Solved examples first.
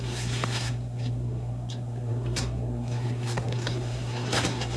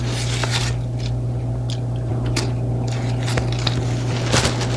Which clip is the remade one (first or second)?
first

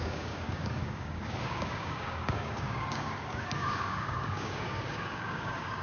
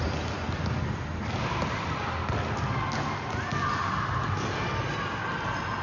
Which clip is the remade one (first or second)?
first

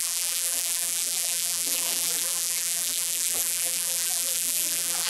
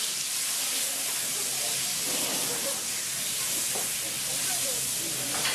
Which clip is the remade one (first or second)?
first